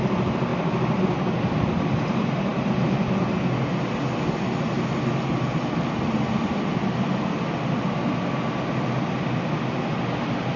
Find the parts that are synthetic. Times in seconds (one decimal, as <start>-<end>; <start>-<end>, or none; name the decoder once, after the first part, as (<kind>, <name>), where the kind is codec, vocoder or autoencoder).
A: none